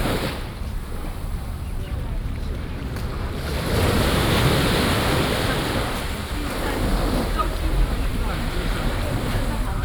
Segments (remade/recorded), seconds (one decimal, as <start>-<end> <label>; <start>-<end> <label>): 0.0-3.5 remade; 3.5-7.4 recorded; 7.4-9.8 remade